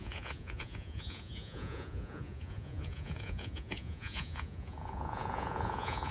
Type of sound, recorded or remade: remade